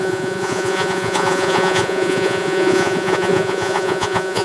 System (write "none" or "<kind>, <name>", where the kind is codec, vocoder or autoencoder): vocoder, Vocos